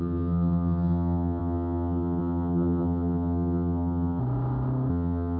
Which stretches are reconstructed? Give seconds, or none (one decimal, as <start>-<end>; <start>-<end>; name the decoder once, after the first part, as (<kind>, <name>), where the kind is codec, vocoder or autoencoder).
0.0-4.2 (vocoder, HiFi-GAN); 4.9-5.4